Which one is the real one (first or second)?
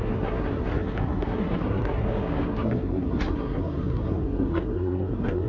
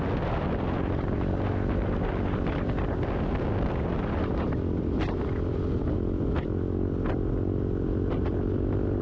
second